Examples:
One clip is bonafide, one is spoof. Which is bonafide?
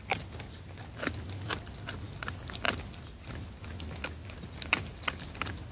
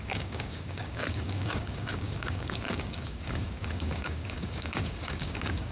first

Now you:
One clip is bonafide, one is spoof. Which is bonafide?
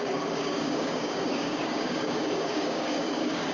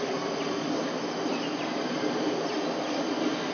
second